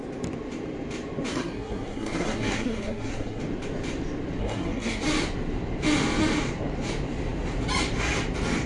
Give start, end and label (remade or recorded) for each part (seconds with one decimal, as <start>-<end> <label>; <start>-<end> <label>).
0.0-1.3 recorded; 1.3-3.4 remade; 3.4-4.4 recorded; 4.4-5.0 remade; 5.0-8.7 recorded